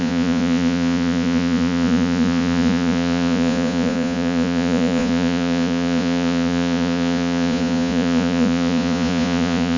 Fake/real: fake